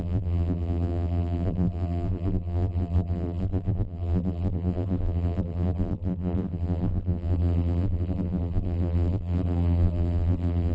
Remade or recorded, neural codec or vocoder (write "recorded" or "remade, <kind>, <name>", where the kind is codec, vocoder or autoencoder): remade, vocoder, BigVGAN v2